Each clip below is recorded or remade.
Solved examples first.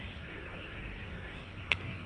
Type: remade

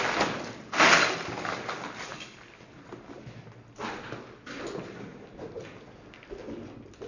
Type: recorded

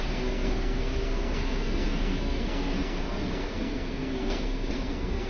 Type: remade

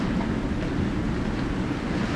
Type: recorded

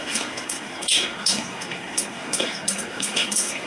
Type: remade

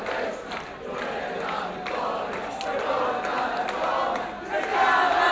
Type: recorded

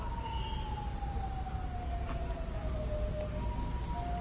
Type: recorded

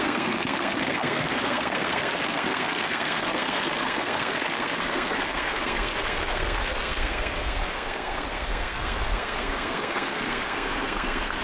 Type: remade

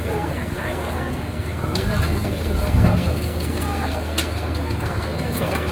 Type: remade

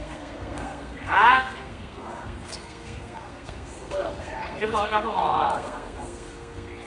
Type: remade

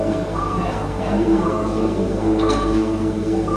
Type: remade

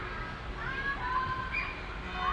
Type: recorded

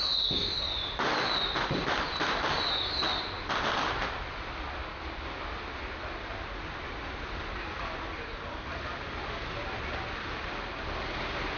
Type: recorded